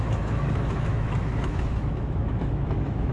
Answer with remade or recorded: remade